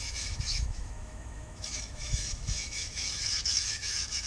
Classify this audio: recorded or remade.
remade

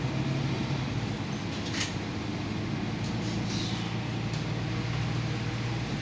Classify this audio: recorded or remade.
recorded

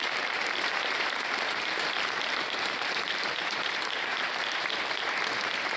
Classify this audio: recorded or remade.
remade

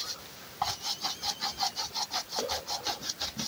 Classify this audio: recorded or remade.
recorded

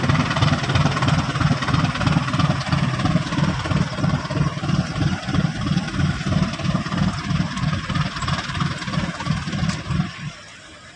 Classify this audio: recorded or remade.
remade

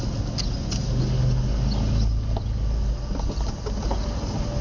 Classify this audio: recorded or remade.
recorded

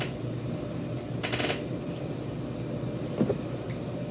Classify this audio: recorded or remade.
recorded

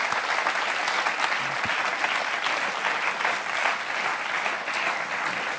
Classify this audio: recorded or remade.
recorded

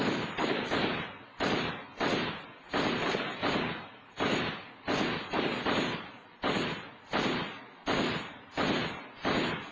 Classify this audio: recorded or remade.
recorded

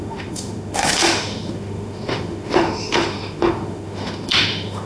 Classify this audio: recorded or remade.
remade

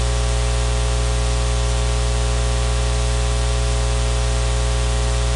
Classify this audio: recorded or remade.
recorded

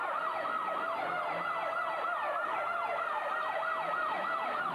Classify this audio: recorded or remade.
recorded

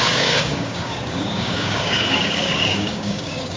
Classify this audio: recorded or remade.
remade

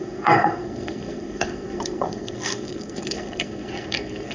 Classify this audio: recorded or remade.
remade